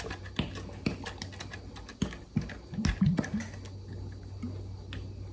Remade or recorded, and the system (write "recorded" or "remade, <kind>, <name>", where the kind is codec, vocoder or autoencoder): recorded